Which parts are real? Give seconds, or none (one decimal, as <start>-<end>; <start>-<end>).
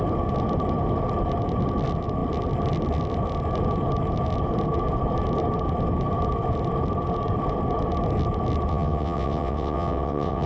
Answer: 0.0-8.7